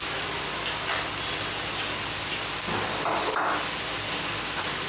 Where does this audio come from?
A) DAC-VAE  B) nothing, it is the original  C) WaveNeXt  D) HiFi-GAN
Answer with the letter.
B